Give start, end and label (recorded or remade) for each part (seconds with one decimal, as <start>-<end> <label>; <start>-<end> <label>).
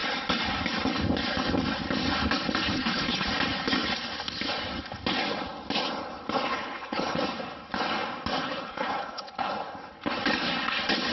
0.0-2.7 recorded; 2.7-3.3 remade; 3.3-6.5 recorded; 6.5-7.2 remade; 7.2-8.4 recorded; 8.4-9.5 remade; 9.5-11.1 recorded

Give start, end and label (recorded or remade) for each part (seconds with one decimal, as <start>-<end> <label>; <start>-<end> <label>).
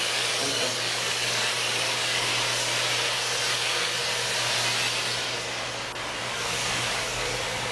0.0-2.3 remade; 2.3-3.5 recorded; 3.5-4.0 remade; 4.0-6.2 recorded; 6.2-7.7 remade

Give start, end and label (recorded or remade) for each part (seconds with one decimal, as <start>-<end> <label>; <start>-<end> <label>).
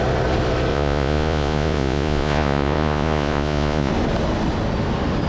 0.0-0.7 recorded; 0.7-3.9 remade; 3.9-5.3 recorded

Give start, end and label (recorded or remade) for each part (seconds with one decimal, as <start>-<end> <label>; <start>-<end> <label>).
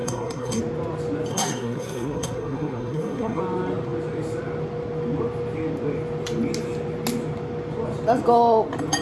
0.0-0.6 remade; 0.6-1.3 recorded; 1.3-3.4 remade; 3.4-9.0 recorded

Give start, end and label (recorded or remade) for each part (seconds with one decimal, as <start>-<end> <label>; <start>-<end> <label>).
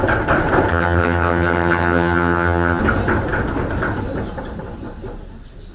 0.0-0.7 recorded; 0.7-2.8 remade; 2.8-5.7 recorded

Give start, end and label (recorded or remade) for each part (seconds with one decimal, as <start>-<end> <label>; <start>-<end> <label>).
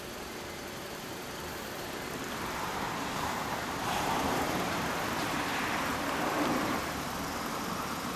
0.0-5.5 remade; 5.5-8.2 recorded